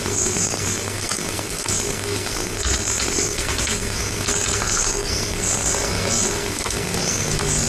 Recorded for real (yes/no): no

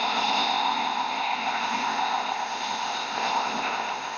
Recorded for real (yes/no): no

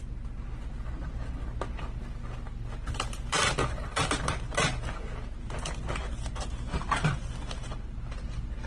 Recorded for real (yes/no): yes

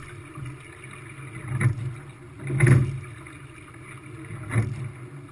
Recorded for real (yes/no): yes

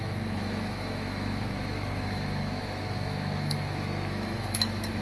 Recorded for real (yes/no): no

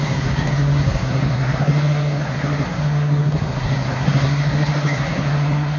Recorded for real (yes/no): no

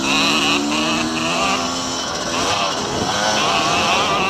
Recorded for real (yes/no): yes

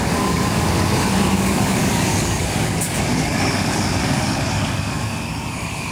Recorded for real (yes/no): no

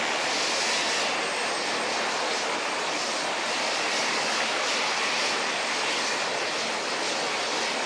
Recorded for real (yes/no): yes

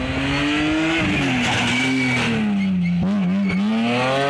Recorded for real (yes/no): yes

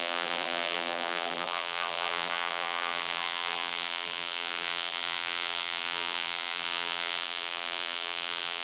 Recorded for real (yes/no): no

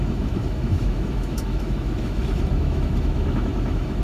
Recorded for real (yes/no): no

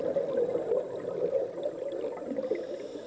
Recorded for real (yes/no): yes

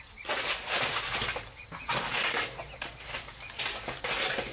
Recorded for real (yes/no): yes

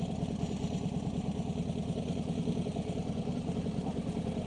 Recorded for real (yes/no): yes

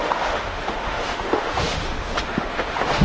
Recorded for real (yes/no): no